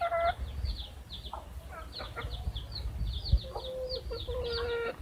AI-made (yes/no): no